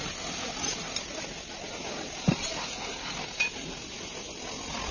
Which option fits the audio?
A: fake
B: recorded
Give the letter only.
B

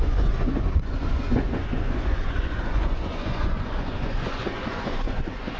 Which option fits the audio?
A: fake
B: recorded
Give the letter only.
A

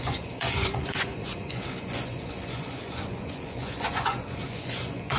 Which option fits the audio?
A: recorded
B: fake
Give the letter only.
B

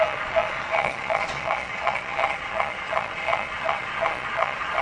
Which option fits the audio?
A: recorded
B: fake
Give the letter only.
B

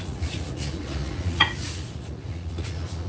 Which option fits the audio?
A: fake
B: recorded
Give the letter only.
A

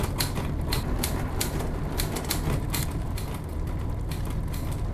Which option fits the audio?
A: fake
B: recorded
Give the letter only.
B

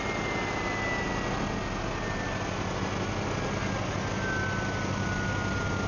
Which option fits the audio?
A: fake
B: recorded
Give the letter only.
B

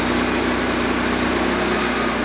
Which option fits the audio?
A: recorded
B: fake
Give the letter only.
A